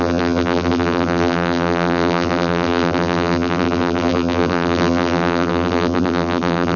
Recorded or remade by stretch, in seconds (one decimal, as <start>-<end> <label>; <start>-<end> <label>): 0.0-6.8 remade